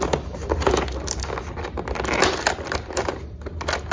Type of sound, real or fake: real